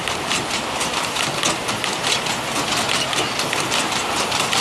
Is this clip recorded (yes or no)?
yes